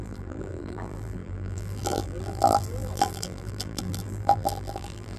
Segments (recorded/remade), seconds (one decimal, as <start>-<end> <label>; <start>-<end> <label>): 0.0-5.2 remade